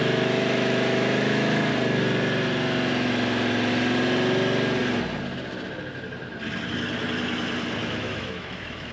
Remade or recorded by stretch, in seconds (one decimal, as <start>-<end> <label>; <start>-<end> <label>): 0.0-1.7 remade; 1.7-7.8 recorded; 7.8-8.9 remade